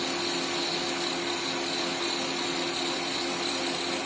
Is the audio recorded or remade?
recorded